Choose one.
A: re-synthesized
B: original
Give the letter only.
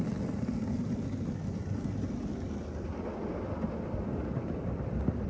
B